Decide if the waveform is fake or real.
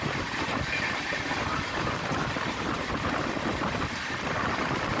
fake